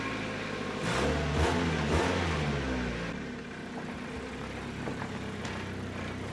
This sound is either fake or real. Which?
real